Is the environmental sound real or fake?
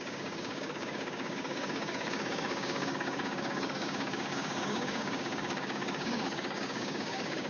fake